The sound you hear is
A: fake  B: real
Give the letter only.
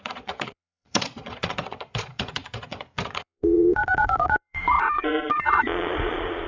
A